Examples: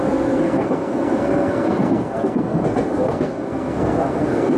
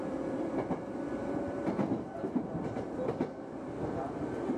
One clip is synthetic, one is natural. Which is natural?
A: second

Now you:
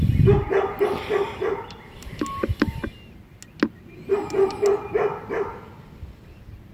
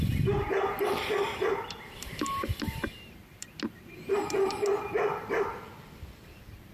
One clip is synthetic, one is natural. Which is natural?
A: first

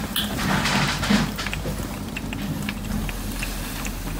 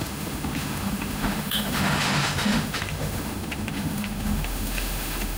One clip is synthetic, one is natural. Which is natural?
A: first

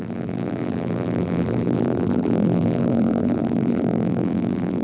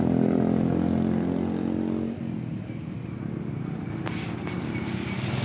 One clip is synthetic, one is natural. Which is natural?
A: second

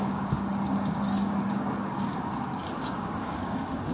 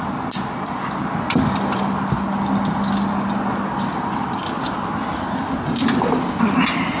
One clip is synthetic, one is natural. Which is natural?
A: second